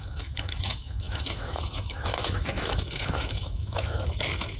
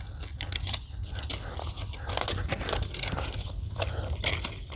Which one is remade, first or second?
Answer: first